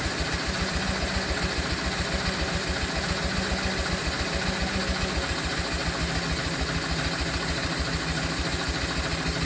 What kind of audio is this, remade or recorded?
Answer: recorded